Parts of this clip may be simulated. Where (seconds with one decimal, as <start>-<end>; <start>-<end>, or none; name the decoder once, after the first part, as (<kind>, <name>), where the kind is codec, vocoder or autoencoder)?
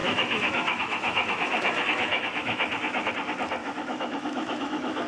0.0-3.1 (autoencoder, DAC-VAE); 3.6-5.1